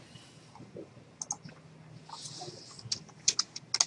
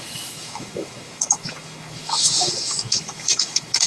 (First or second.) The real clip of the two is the first